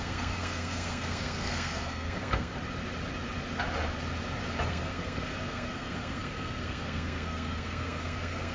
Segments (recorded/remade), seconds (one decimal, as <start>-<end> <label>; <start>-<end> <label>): 0.0-2.5 remade; 2.5-4.7 recorded; 4.7-8.5 remade